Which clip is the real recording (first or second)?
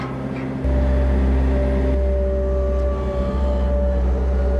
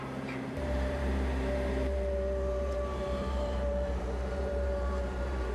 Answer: first